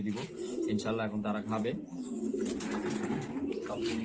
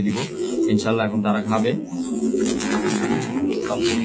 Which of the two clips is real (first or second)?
first